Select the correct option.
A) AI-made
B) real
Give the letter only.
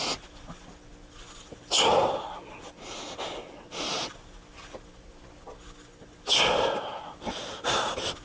B